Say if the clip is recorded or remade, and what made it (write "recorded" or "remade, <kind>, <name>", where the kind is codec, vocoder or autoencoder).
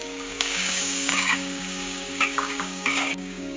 remade, codec, DAC